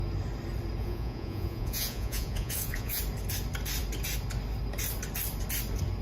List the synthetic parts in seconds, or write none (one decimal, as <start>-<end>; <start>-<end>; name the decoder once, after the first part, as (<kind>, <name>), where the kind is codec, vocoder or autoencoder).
0.8-3.0 (vocoder, Vocos)